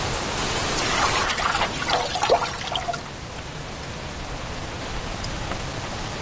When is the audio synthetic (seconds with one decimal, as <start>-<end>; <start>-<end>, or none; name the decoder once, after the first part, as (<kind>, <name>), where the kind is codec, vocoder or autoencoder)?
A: 0.6-1.8 (vocoder, BigVGAN v2); 4.9-6.2